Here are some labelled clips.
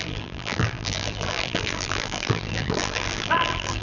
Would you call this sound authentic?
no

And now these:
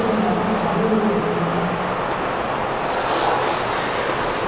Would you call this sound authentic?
yes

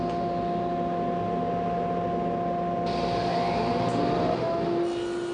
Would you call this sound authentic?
yes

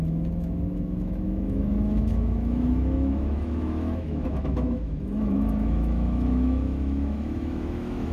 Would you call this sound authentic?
no